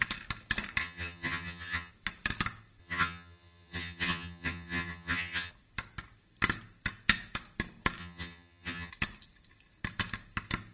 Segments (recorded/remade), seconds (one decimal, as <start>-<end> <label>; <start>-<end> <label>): 0.0-0.8 recorded; 0.8-1.9 remade; 1.9-2.8 recorded; 2.8-5.5 remade; 5.5-8.0 recorded; 8.0-8.9 remade; 8.9-10.7 recorded